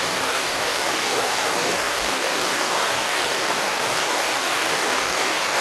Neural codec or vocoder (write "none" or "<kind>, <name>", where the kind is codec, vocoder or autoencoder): codec, DAC